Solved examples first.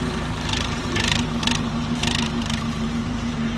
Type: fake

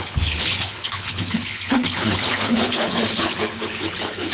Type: fake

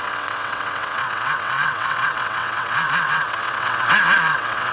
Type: fake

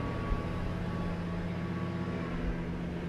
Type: real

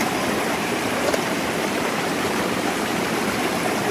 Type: fake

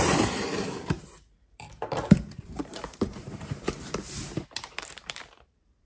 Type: fake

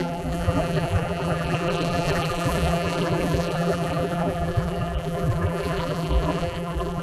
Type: fake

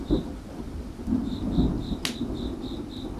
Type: real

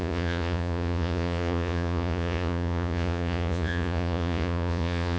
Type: fake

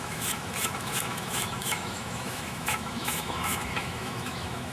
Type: fake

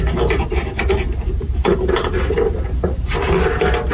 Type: real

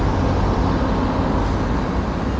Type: real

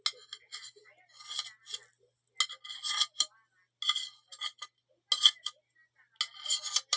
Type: real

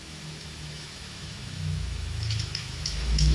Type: fake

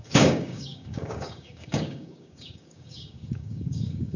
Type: fake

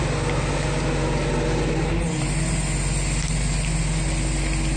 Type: real